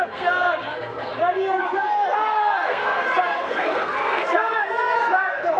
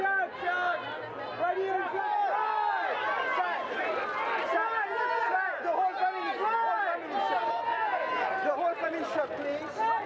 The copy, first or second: first